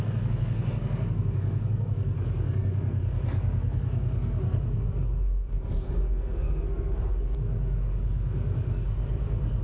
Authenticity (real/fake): fake